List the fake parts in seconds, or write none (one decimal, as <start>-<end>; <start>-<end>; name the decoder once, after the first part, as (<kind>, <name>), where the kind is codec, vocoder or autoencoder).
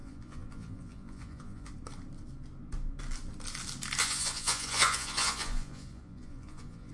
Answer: 0.0-1.7 (vocoder, Vocos); 4.0-6.9